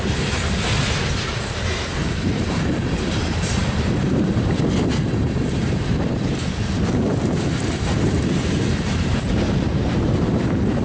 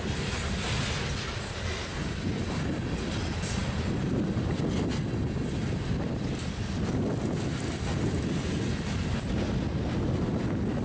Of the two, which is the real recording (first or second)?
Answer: second